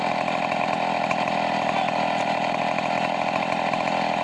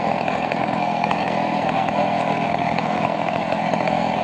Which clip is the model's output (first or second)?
second